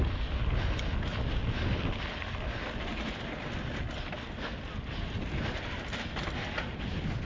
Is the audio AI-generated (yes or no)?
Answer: no